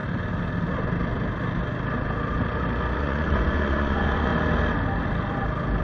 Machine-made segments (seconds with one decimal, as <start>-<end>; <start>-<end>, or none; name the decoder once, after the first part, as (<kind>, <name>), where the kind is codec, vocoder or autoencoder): 3.0-4.3 (vocoder, Vocos)